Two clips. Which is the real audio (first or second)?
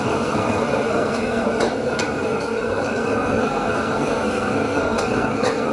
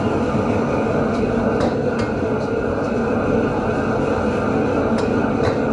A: second